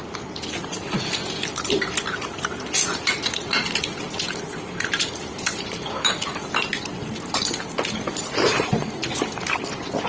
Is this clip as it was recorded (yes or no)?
yes